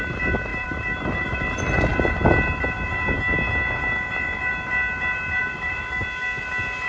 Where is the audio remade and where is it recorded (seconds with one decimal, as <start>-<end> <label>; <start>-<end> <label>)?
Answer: 0.0-0.5 recorded; 0.5-1.4 remade; 1.4-5.4 recorded; 5.4-6.0 remade; 6.0-6.9 recorded